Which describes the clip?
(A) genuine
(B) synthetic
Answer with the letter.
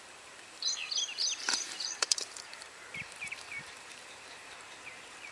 B